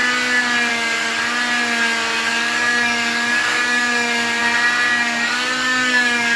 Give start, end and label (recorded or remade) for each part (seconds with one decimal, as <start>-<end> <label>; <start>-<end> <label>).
0.0-0.7 recorded; 0.7-1.1 remade; 1.1-2.3 recorded; 2.3-4.4 remade; 4.4-4.9 recorded; 4.9-6.4 remade